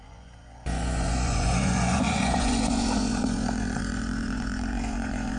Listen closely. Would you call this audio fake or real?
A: fake